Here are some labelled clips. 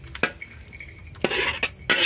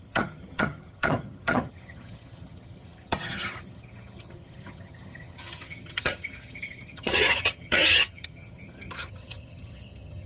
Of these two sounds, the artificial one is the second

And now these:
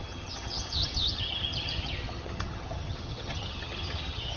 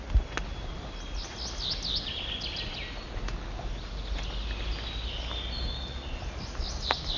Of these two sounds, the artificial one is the first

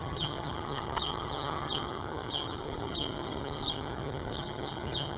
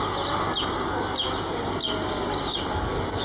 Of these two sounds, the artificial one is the first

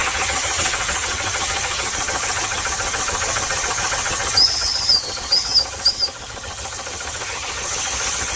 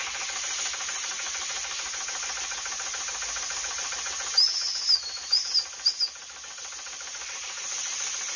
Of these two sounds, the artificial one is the first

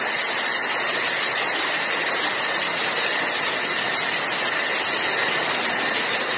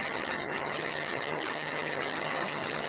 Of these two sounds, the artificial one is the second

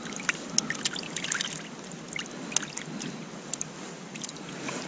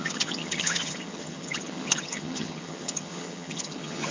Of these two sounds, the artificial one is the second